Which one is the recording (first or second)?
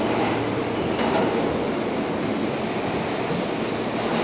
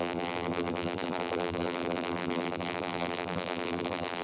first